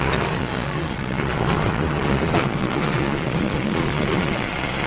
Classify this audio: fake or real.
fake